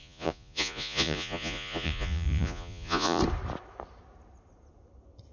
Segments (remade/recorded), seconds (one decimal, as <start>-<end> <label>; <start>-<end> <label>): 0.0-3.2 remade; 3.2-5.3 recorded